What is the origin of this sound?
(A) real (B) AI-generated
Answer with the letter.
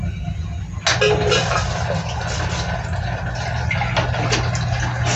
A